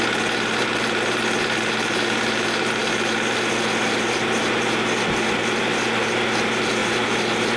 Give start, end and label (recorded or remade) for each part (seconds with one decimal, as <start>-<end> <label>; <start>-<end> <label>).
0.0-5.4 recorded; 5.4-6.1 remade; 6.1-6.8 recorded; 6.8-7.6 remade